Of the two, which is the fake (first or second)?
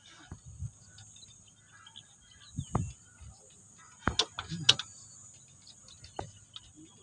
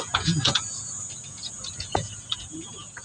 second